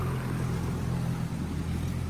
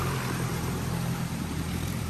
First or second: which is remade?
second